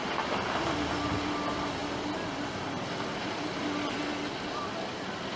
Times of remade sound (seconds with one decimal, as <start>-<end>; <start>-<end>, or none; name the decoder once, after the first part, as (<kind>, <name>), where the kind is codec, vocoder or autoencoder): none